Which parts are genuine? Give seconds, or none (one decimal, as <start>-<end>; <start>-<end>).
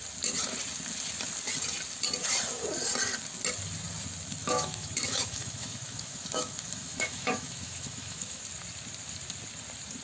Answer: 0.0-4.4; 8.4-10.0